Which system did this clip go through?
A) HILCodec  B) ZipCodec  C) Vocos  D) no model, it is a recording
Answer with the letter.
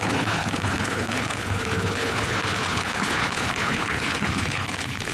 A